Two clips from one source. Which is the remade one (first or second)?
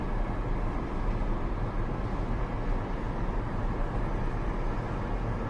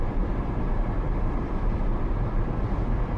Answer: second